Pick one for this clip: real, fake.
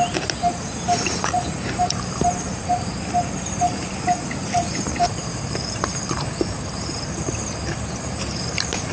fake